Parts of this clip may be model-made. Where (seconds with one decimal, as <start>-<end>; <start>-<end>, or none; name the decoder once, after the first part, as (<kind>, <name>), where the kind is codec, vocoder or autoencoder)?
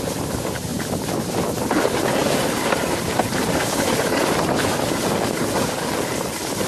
0.7-1.2 (vocoder, BigVGAN v2); 2.2-3.6